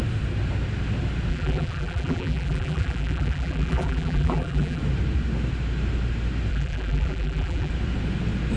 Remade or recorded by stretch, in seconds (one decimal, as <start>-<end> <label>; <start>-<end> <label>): 0.0-1.3 recorded; 1.3-4.8 remade; 4.8-6.5 recorded; 6.5-7.7 remade; 7.7-8.6 recorded